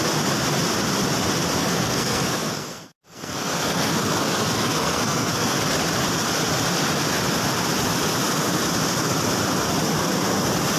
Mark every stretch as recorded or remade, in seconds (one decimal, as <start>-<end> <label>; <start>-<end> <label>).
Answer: 0.0-1.6 recorded; 1.6-5.6 remade; 5.6-10.8 recorded